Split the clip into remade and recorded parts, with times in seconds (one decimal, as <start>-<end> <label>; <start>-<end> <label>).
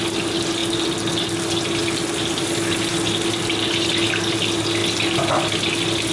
0.0-6.1 recorded